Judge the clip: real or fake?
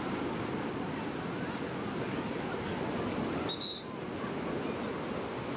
real